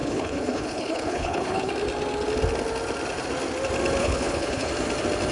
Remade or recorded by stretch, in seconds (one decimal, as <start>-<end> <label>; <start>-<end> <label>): 0.0-1.7 remade; 1.7-4.0 recorded; 4.0-4.7 remade; 4.7-5.3 recorded